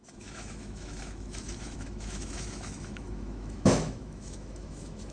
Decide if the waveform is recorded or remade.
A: remade